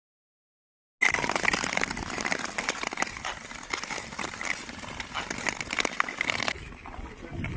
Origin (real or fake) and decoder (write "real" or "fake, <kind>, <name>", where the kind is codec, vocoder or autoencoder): real